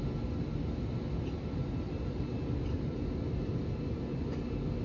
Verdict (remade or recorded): recorded